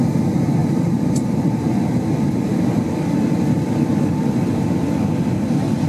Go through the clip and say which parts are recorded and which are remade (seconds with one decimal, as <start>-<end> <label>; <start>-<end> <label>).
0.0-0.6 recorded; 0.6-4.1 remade; 4.1-5.9 recorded